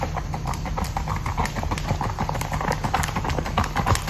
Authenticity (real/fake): real